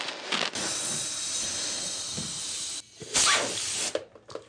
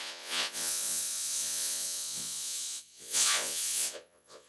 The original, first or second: first